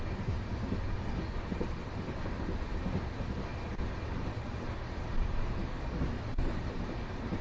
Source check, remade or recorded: recorded